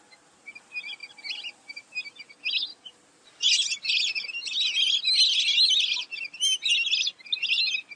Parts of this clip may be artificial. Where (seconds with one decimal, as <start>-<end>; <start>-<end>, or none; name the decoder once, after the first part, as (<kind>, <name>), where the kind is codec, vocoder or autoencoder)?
none